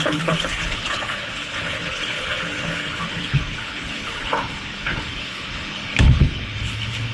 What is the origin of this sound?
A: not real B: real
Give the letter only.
A